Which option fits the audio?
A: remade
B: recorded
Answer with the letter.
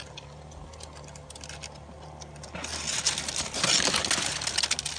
B